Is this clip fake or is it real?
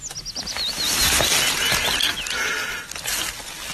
real